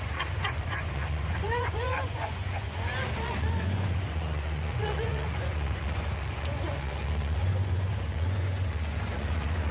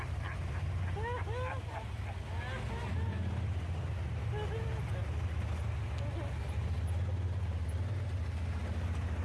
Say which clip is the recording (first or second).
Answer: second